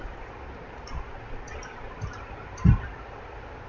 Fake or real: real